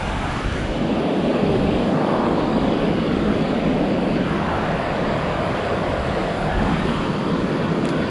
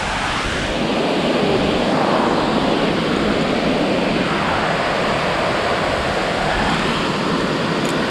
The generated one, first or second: first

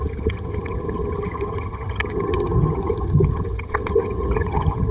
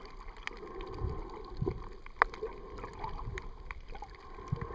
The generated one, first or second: first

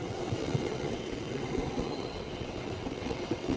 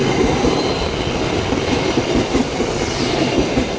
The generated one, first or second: first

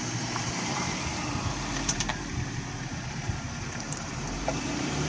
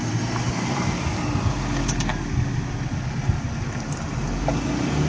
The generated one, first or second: first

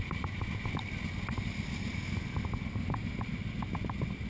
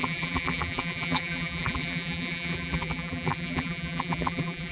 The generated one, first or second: second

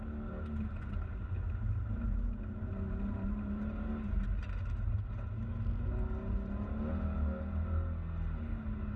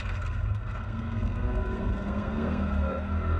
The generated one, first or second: second